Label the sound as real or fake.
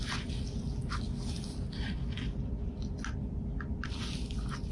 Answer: real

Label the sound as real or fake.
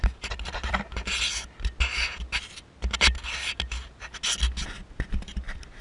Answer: real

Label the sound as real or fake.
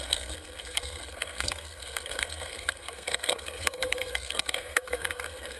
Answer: fake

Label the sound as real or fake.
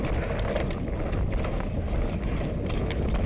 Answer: real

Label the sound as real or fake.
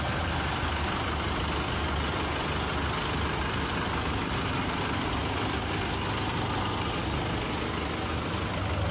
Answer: real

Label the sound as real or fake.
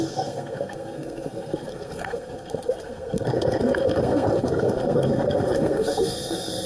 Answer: fake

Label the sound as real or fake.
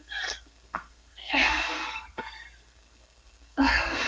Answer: fake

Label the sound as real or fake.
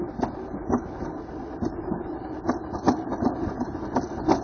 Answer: real